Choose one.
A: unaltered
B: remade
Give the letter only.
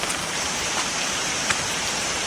B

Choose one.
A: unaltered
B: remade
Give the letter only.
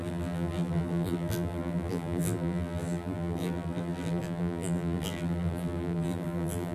B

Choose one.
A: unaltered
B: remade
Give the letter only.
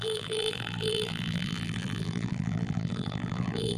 B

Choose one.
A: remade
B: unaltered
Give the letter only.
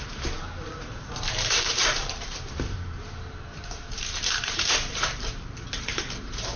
A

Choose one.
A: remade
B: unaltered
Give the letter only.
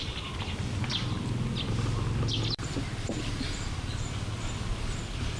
A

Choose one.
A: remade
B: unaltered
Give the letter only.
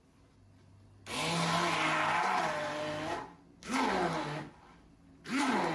B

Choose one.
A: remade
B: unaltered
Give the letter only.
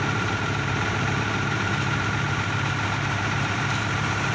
A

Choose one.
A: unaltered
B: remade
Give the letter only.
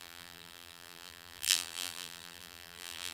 B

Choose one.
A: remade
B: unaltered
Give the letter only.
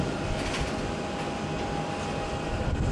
B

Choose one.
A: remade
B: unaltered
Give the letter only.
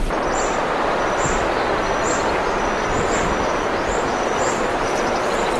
B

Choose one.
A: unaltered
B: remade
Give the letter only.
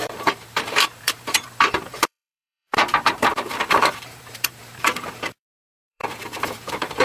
B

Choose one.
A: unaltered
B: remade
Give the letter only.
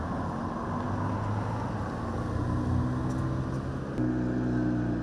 A